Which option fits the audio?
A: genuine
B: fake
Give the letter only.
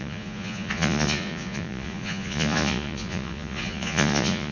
B